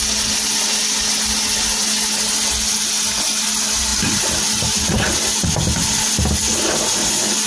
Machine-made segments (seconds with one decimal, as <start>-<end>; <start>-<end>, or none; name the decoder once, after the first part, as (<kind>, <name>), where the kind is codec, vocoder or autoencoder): none